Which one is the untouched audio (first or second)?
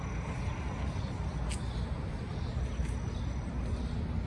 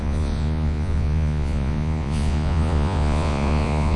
first